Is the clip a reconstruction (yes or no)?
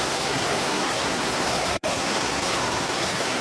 yes